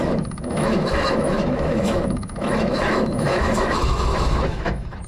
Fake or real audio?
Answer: fake